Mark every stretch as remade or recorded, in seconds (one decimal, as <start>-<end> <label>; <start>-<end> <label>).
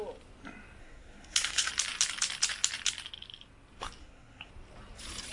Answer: 0.0-0.8 recorded; 0.8-1.7 remade; 1.7-4.0 recorded; 4.0-4.5 remade; 4.5-5.3 recorded